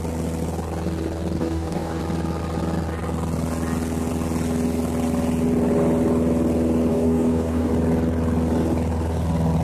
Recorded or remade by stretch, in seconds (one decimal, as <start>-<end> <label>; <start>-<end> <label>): 0.0-1.4 recorded; 1.4-2.0 remade; 2.0-6.9 recorded; 6.9-7.7 remade; 7.7-9.6 recorded